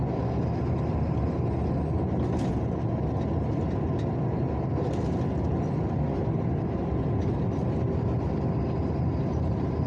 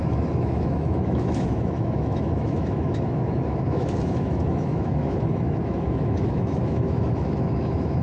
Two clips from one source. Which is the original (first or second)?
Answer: first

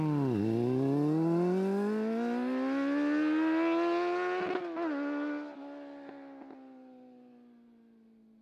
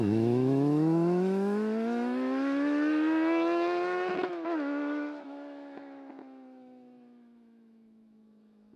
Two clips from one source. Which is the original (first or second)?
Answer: first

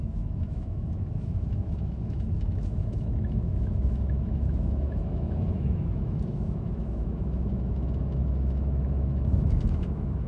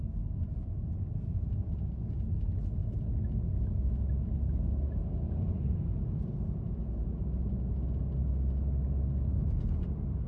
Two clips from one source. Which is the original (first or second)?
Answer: second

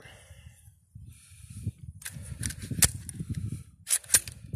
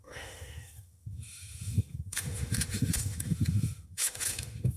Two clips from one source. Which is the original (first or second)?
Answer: first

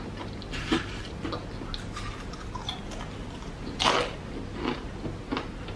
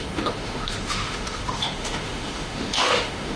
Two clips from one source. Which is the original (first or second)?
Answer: first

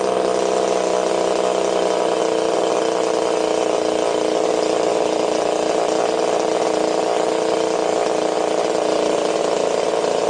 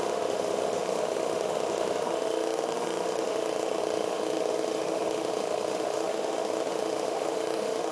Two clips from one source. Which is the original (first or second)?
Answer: first